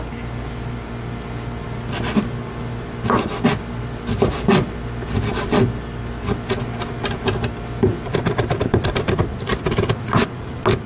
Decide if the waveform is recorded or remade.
recorded